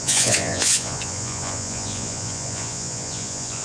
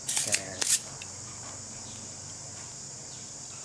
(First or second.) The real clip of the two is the second